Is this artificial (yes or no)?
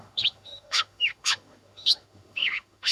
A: yes